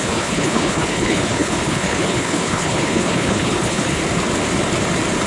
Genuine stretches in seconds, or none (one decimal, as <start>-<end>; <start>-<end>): 4.0-5.3